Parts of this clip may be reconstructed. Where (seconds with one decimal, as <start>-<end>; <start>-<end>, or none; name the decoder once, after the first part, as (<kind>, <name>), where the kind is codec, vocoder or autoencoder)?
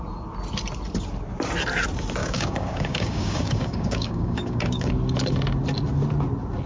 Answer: 2.2-4.9 (codec, DAC)